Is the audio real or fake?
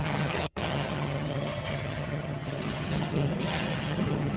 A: fake